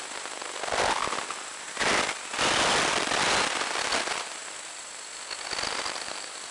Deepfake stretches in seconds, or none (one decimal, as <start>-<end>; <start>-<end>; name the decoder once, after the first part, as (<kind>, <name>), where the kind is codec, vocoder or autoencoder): none

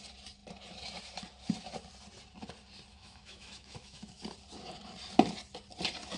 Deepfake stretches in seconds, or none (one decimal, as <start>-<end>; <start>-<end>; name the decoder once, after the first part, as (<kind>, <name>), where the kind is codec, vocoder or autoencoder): 2.9-4.2 (autoencoder, DAC-VAE)